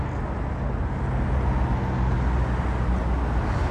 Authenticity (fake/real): real